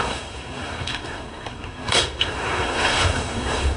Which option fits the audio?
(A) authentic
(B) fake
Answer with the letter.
B